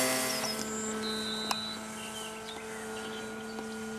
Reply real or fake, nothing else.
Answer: real